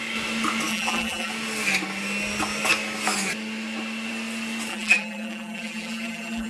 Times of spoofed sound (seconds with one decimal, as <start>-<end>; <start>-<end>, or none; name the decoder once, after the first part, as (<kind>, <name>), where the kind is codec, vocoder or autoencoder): 0.7-1.3 (vocoder, BigVGAN v2); 4.7-6.5